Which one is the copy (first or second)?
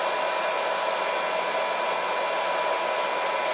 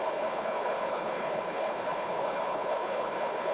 second